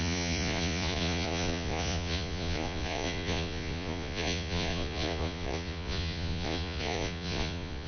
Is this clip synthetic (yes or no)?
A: yes